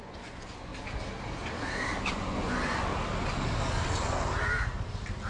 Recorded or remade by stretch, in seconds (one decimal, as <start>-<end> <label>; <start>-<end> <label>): 0.0-0.7 remade; 0.7-2.1 recorded; 2.1-2.9 remade; 2.9-5.3 recorded